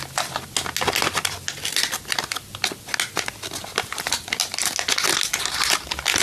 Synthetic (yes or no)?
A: no